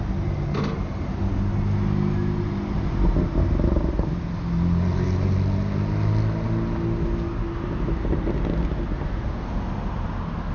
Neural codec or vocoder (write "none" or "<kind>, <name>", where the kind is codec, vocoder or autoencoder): none